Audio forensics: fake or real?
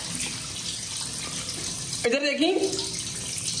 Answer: real